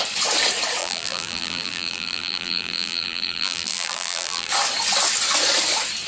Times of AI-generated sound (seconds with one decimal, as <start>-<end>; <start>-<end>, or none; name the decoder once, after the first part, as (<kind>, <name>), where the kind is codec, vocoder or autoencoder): 0.8-4.5 (vocoder, BigVGAN v2)